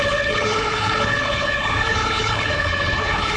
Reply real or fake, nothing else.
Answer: fake